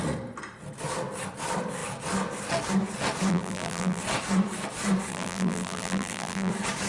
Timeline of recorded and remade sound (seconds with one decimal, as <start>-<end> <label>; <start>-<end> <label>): 0.0-3.3 recorded; 3.3-4.0 remade; 4.0-5.1 recorded; 5.1-6.5 remade; 6.5-6.9 recorded